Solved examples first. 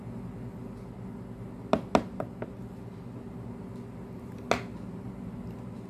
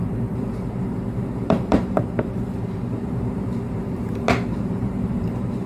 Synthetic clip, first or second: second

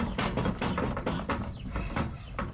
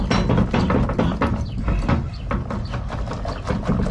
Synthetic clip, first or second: first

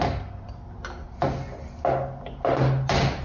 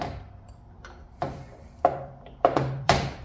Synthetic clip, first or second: second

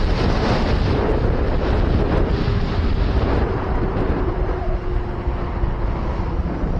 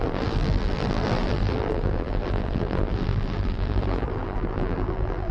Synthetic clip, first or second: second